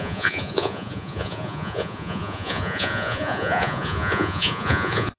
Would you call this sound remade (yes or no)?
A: yes